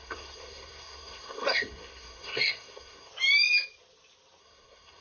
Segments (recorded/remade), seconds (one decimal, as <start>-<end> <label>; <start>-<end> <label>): 0.0-3.1 remade; 3.1-4.4 recorded; 4.4-5.0 remade